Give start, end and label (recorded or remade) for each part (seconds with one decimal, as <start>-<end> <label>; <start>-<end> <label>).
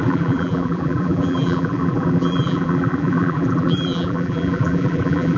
0.0-5.4 remade